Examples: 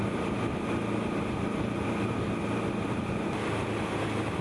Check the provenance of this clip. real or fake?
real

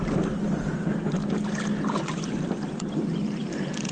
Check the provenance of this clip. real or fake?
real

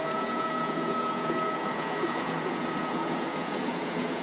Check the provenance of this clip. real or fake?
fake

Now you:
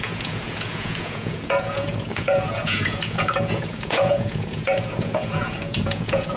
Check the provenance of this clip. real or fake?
fake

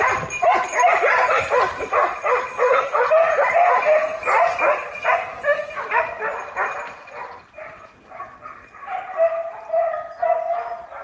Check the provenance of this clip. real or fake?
real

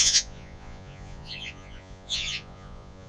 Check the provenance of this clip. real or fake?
fake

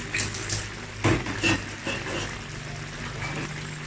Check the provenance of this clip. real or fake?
real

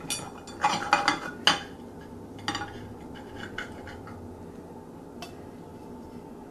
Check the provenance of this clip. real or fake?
real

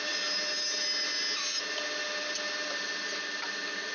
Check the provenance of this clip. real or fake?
real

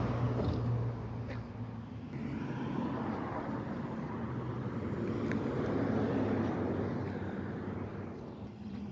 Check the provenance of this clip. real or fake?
real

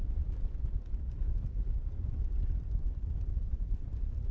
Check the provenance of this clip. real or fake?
real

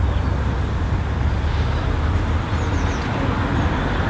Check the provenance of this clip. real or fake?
real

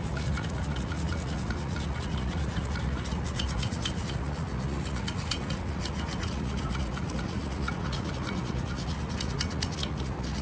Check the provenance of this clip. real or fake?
fake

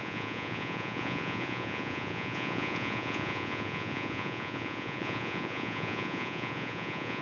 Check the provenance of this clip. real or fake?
fake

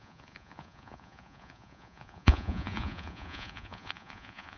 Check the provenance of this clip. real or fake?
fake